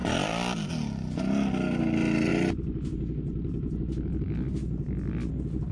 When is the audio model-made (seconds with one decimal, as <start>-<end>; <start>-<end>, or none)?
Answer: none